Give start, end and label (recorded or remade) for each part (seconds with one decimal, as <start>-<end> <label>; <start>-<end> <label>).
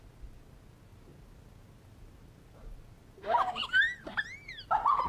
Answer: 0.0-5.1 recorded